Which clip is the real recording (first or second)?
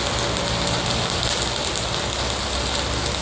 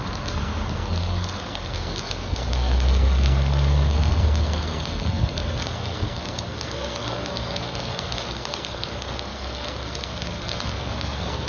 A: first